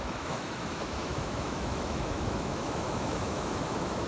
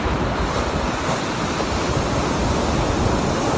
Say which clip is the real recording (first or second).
second